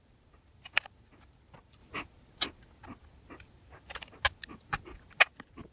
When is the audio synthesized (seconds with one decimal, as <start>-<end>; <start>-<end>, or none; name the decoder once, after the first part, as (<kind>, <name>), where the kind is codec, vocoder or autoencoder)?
none